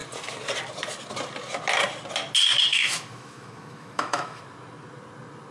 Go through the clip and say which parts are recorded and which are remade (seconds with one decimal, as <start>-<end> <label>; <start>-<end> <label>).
0.0-2.7 recorded; 2.7-4.4 remade; 4.4-5.5 recorded